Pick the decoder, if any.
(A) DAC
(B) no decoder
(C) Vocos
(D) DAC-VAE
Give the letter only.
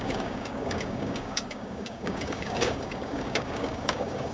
A